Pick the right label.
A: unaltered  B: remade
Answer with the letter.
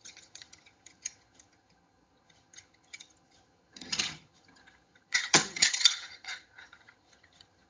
B